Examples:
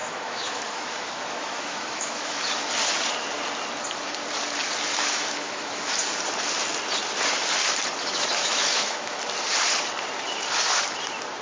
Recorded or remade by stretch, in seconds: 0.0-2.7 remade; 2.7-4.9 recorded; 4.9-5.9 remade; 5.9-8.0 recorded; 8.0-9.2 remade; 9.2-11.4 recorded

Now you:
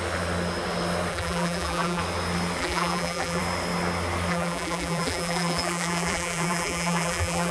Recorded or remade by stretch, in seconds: 0.0-1.1 recorded; 1.1-2.0 remade; 2.0-2.6 recorded; 2.6-3.4 remade; 3.4-4.3 recorded; 4.3-7.5 remade

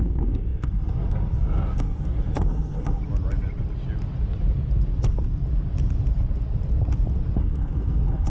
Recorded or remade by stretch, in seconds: 0.0-3.0 remade; 3.0-7.4 recorded; 7.4-8.3 remade

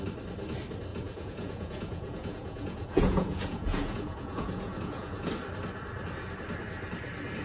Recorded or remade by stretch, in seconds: 0.0-0.9 recorded; 0.9-5.3 remade; 5.3-7.4 recorded

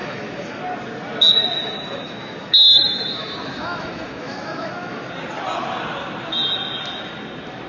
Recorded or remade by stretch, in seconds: 0.0-0.6 remade; 0.6-1.6 recorded; 1.6-5.0 remade; 5.0-7.7 recorded

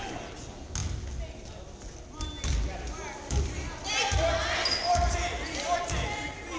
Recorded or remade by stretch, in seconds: 0.0-6.6 recorded

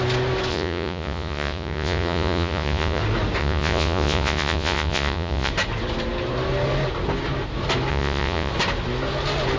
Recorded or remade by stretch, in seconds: 0.0-0.5 recorded; 0.5-3.0 remade; 3.0-3.4 recorded; 3.4-5.5 remade; 5.5-7.9 recorded; 7.9-8.5 remade; 8.5-9.6 recorded